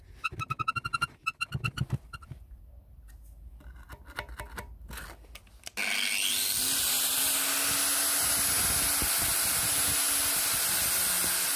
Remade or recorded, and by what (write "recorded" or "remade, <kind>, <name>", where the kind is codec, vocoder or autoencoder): recorded